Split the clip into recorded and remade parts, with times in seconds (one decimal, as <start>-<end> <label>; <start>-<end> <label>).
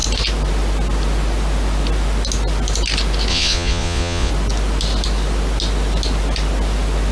0.0-3.3 recorded; 3.3-4.3 remade; 4.3-7.1 recorded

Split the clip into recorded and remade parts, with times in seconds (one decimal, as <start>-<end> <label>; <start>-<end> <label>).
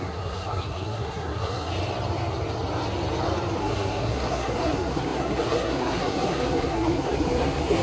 0.0-1.7 remade; 1.7-3.6 recorded; 3.6-7.8 remade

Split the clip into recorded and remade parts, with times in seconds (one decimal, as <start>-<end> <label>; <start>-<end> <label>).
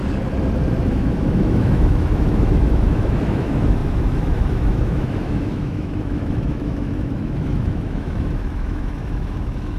0.0-0.9 recorded; 0.9-9.8 remade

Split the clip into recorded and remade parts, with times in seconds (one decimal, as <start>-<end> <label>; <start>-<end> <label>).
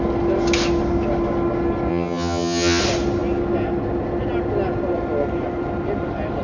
0.0-1.9 recorded; 1.9-2.8 remade; 2.8-6.4 recorded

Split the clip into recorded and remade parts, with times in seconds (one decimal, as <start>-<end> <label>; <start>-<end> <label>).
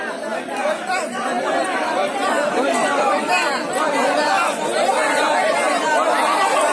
0.0-1.6 recorded; 1.6-3.7 remade; 3.7-4.7 recorded; 4.7-5.2 remade; 5.2-6.7 recorded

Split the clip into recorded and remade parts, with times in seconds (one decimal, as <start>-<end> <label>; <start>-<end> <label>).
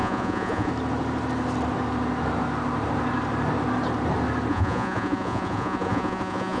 0.0-0.7 remade; 0.7-4.5 recorded; 4.5-6.6 remade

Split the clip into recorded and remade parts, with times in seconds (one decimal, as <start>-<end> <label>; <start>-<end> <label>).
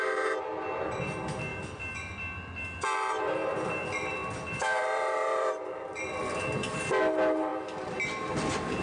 0.0-4.2 recorded; 4.2-6.2 remade; 6.2-8.8 recorded